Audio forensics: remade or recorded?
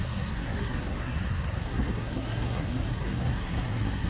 remade